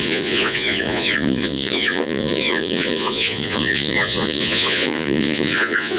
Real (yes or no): no